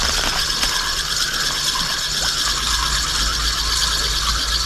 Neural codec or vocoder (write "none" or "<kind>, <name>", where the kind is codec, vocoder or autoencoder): none